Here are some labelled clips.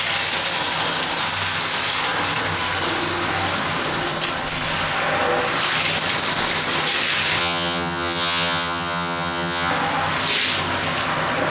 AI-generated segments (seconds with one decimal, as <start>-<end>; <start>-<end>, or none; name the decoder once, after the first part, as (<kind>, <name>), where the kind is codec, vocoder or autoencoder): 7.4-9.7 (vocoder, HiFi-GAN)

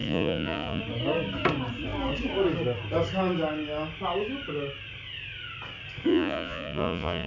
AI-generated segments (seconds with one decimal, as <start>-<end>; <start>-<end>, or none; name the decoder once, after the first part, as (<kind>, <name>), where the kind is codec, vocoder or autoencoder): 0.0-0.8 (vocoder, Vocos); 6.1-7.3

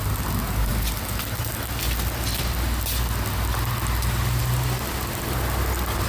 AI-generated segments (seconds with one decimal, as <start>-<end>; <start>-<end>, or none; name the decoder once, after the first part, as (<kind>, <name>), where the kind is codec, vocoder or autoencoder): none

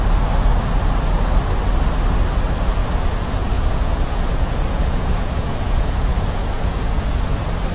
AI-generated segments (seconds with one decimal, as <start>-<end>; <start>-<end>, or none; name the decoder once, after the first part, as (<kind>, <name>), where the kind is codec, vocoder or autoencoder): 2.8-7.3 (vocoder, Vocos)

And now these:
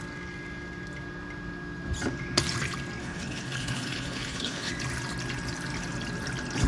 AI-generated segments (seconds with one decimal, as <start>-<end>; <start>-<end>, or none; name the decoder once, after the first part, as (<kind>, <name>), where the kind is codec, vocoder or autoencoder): 3.0-4.7 (codec, HILCodec)

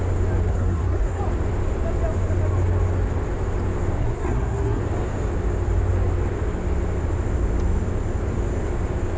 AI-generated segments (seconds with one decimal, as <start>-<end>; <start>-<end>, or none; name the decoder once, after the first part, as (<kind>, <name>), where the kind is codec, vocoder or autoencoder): 0.5-1.2 (codec, SNAC); 4.0-4.8

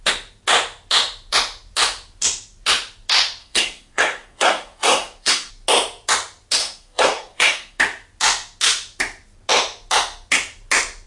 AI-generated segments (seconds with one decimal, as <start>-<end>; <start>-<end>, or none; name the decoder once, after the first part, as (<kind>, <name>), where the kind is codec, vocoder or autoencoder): 3.4-5.5 (codec, SNAC); 6.6-7.8

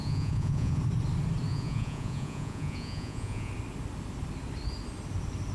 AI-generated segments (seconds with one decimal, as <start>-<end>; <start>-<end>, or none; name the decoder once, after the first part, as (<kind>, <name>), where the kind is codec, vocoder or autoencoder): 0.0-0.8 (vocoder, Vocos); 1.5-3.5